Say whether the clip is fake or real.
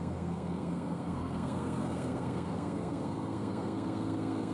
fake